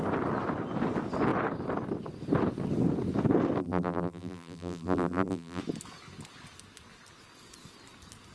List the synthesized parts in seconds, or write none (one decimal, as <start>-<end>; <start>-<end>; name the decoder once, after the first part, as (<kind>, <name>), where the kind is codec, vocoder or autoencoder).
3.6-5.6 (vocoder, BigVGAN v2)